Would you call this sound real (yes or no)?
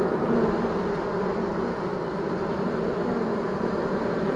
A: no